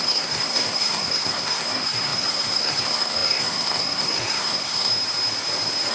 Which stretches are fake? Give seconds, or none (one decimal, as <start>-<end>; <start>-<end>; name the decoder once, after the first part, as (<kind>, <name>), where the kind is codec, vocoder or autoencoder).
0.0-4.9 (codec, SNAC)